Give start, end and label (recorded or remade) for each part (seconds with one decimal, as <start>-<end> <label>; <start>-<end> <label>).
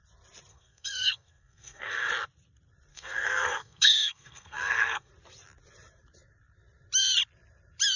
0.0-0.5 recorded; 0.5-2.1 remade; 2.1-2.9 recorded; 2.9-5.1 remade; 5.1-8.0 recorded